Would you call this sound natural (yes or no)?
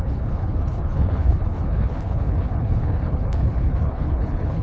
no